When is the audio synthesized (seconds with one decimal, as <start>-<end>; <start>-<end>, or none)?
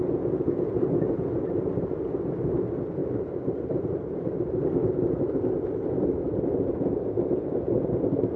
3.0-4.3